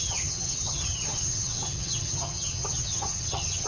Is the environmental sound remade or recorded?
remade